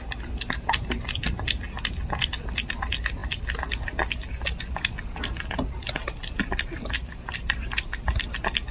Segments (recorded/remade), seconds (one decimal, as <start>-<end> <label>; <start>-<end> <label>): 0.0-8.7 recorded